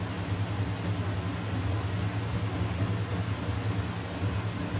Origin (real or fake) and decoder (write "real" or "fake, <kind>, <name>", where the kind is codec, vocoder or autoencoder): real